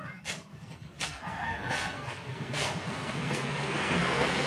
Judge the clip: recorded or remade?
remade